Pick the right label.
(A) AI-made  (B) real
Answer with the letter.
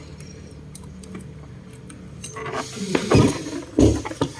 A